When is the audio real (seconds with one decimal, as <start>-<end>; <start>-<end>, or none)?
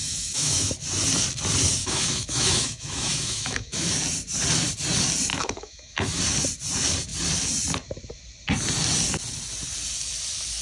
0.7-1.8; 3.9-5.3; 6.2-10.6